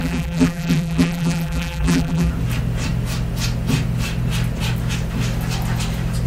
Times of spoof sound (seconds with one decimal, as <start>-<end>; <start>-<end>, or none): 0.0-2.3